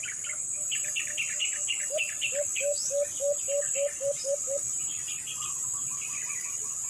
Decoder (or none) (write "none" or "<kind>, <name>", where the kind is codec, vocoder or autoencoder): none